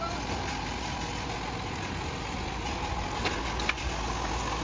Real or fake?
real